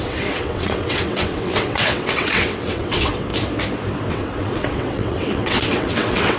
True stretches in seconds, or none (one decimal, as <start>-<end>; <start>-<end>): 3.3-4.1